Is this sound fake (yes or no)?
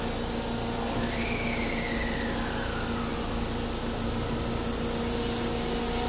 no